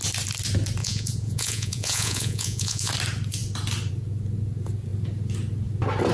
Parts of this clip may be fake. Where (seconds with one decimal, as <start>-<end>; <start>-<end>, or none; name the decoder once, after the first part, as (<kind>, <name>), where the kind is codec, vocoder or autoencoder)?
0.8-2.9 (vocoder, Vocos)